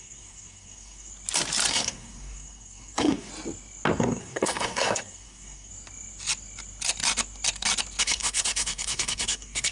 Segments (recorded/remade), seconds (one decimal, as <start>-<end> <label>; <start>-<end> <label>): 0.0-1.1 remade; 1.1-1.7 recorded; 1.7-3.3 remade; 3.3-4.0 recorded; 4.0-5.7 remade; 5.7-8.0 recorded; 8.0-9.7 remade